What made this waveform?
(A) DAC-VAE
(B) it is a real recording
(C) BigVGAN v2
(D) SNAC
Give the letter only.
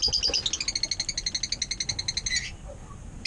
B